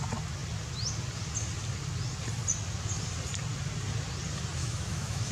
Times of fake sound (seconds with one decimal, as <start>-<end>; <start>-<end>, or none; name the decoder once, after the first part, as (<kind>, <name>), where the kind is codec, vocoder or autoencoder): 4.6-5.3 (autoencoder, DAC-VAE)